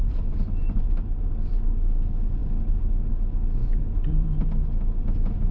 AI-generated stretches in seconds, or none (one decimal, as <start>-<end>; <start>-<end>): 0.6-1.2; 3.6-4.4; 5.0-5.5